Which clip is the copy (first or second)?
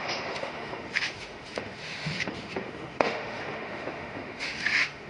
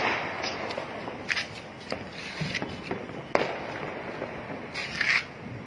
first